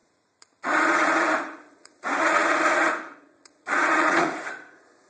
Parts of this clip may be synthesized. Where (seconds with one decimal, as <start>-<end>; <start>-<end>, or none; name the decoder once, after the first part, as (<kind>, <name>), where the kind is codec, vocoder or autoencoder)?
0.0-5.1 (vocoder, Vocos)